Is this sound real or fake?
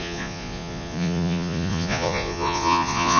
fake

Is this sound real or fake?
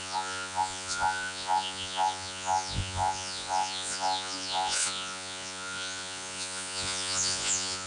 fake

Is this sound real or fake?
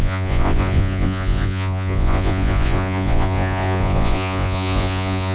fake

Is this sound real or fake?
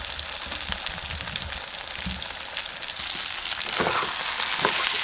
real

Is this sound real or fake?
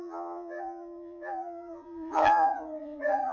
fake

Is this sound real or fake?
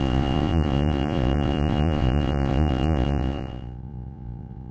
fake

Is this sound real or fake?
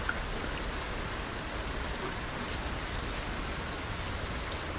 real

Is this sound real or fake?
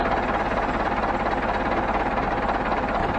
real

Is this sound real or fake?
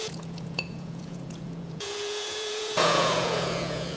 fake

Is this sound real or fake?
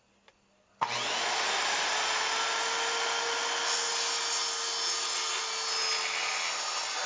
real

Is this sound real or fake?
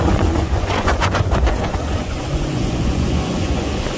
fake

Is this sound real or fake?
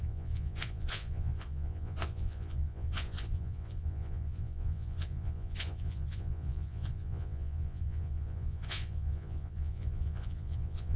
fake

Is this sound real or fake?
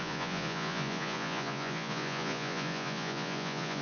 fake